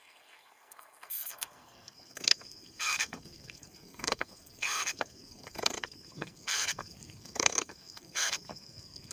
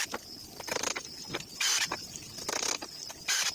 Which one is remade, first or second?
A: first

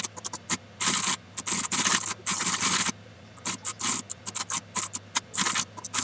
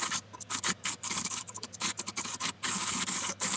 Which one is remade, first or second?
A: second